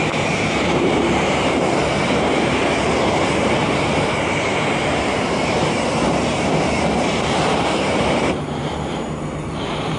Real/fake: fake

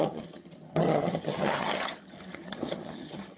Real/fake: fake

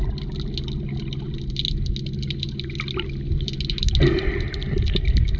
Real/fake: real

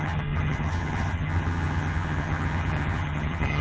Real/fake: fake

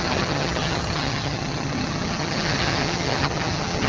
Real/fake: fake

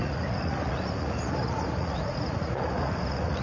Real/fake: fake